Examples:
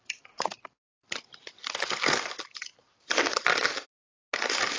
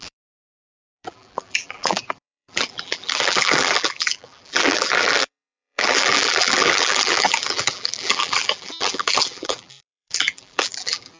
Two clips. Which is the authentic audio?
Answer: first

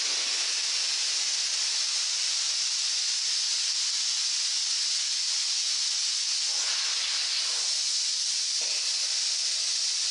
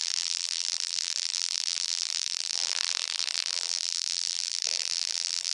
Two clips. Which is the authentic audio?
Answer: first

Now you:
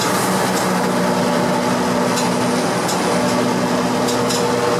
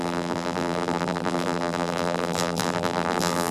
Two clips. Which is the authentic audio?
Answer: first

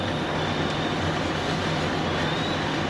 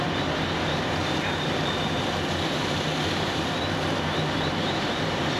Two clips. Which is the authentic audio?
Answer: first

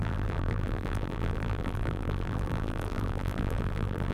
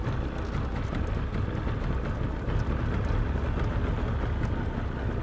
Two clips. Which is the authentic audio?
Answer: second